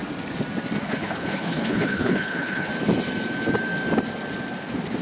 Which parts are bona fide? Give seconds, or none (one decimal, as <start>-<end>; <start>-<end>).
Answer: 0.0-0.8; 2.7-5.0